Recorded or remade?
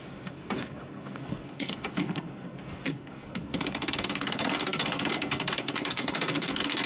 remade